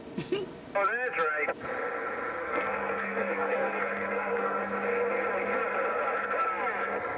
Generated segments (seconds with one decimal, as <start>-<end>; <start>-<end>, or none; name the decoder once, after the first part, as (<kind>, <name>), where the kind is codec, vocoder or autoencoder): 2.4-4.6 (codec, SNAC)

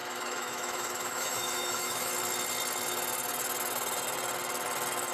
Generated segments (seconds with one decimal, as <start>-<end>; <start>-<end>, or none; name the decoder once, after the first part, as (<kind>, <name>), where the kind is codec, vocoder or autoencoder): 0.0-2.1 (autoencoder, DAC-VAE)

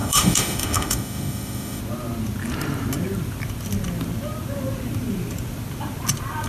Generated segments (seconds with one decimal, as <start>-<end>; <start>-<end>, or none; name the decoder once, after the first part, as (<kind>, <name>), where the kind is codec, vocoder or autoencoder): 0.0-1.8 (autoencoder, DAC-VAE)

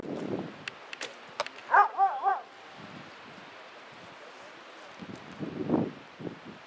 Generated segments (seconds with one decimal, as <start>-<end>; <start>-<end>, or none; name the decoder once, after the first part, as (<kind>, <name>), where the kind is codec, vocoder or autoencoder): none